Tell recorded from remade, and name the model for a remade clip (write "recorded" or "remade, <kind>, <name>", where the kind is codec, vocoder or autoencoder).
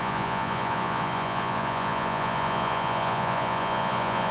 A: remade, vocoder, Vocos